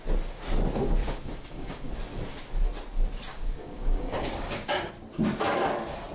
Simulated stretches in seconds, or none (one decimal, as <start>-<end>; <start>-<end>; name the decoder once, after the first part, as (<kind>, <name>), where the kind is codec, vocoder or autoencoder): 1.0-1.9 (codec, DAC); 3.3-4.9